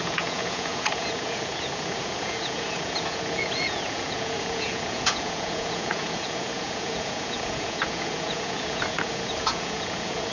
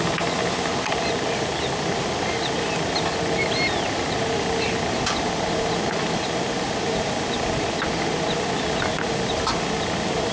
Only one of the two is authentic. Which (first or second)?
second